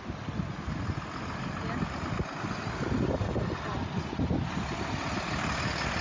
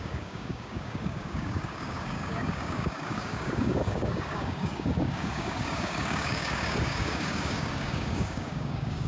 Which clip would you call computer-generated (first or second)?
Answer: second